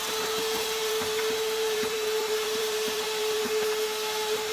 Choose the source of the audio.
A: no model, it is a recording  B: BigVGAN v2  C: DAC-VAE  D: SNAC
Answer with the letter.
B